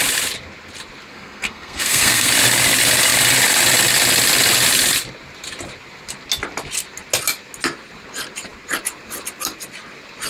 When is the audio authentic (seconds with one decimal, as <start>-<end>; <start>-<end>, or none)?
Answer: 0.0-1.1; 2.3-10.3